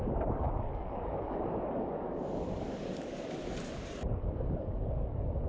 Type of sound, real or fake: fake